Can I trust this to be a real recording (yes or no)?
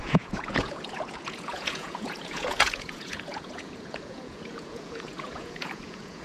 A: no